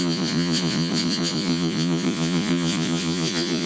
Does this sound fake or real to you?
fake